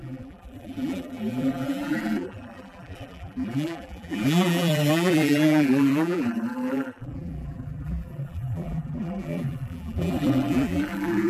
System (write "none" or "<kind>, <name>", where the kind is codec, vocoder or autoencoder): vocoder, BigVGAN v2